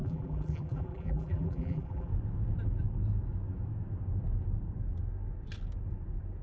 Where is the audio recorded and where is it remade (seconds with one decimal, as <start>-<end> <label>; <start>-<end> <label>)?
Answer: 0.0-2.1 remade; 2.1-6.4 recorded